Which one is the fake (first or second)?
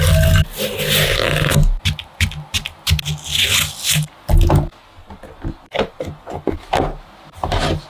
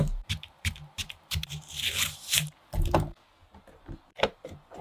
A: second